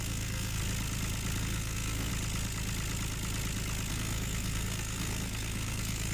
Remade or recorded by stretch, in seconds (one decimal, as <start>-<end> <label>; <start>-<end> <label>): 0.0-0.6 remade; 0.6-1.4 recorded; 1.4-2.1 remade; 2.1-3.9 recorded; 3.9-6.1 remade